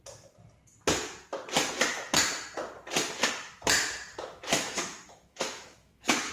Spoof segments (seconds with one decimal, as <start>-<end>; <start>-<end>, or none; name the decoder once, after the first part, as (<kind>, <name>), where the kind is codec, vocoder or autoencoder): 4.1-6.3 (autoencoder, DAC-VAE)